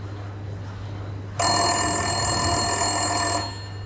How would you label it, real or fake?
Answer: real